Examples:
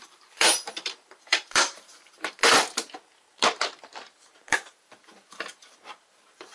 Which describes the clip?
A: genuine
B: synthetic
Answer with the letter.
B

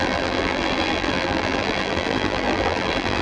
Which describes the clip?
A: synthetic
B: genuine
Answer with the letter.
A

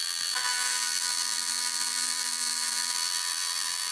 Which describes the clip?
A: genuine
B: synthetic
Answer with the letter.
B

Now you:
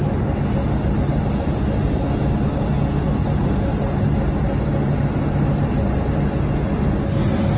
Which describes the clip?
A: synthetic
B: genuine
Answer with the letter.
B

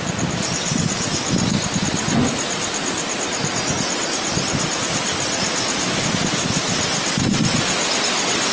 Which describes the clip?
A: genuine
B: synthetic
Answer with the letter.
A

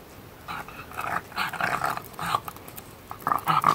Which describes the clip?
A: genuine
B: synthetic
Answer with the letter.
A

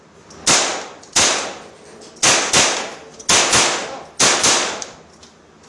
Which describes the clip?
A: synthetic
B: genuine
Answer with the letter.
B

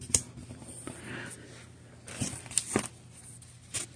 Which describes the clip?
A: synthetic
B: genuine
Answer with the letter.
B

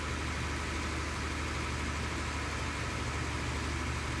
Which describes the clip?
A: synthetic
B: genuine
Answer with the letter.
B